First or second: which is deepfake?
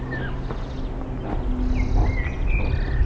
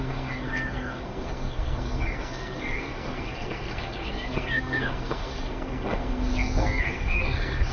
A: second